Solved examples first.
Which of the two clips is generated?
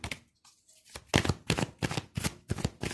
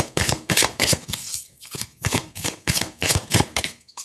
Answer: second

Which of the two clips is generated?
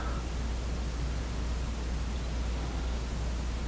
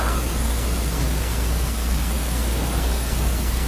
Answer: second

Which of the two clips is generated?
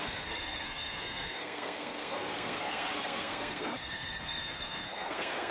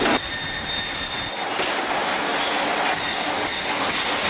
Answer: first